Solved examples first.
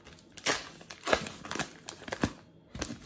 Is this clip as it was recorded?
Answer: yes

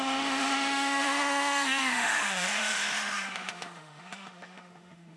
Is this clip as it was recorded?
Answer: no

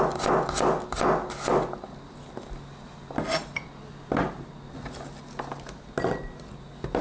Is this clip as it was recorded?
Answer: yes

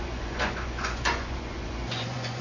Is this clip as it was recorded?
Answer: no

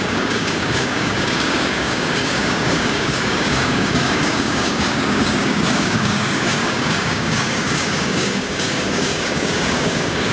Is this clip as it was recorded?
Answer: no